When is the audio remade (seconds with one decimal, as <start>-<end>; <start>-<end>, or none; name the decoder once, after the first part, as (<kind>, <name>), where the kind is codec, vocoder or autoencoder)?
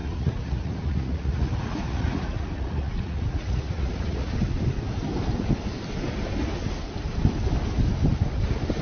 0.0-4.3 (vocoder, Vocos)